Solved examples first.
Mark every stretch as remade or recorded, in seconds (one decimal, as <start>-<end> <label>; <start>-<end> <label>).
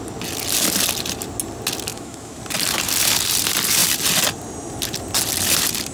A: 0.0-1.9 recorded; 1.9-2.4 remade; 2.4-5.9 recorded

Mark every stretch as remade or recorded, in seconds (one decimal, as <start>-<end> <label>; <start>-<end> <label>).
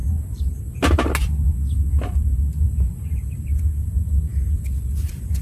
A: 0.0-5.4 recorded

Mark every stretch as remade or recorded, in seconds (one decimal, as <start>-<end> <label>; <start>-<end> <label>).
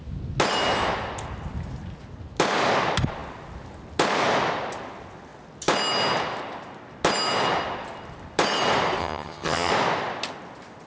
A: 0.0-9.0 recorded; 9.0-9.7 remade; 9.7-10.9 recorded